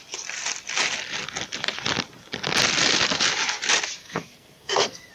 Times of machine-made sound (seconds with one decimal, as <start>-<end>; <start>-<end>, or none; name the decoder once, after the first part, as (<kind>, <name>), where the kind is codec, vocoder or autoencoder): 4.0-5.1 (codec, SNAC)